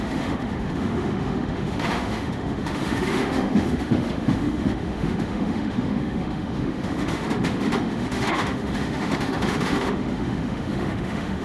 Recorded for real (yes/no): no